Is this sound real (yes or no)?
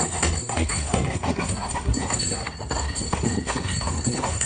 no